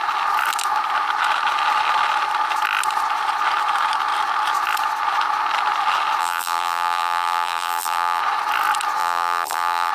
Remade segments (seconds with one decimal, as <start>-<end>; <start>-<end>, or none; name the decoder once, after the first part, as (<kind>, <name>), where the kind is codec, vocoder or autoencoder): 6.2-8.2 (vocoder, BigVGAN v2); 9.0-9.9